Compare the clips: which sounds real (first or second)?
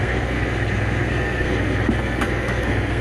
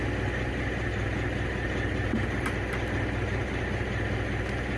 second